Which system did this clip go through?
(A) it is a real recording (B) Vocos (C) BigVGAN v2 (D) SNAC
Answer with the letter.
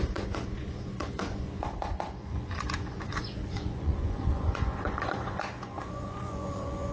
B